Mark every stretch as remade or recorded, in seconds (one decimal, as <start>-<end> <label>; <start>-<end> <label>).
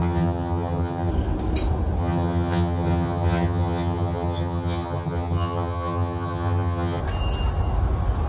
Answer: 0.0-1.1 remade; 1.1-2.0 recorded; 2.0-7.0 remade; 7.0-8.3 recorded